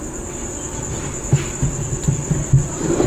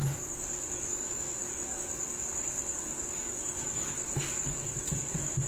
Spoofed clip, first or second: second